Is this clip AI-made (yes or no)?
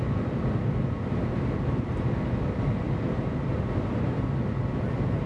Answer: no